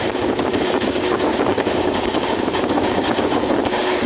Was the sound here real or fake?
fake